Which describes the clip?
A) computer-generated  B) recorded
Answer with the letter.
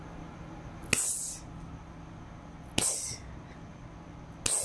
B